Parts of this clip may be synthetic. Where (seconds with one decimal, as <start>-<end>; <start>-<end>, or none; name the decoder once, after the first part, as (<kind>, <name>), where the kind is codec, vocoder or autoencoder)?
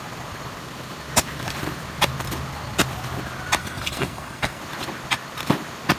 3.6-4.6 (codec, SNAC)